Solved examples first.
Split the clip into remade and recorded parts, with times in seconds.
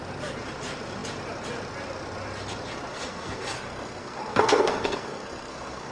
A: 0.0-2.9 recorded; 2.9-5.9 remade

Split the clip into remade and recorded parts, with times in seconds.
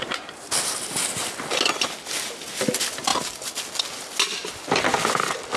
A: 0.0-5.6 recorded